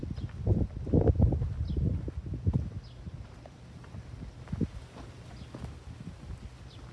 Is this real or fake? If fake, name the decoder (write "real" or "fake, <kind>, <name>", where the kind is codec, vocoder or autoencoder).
real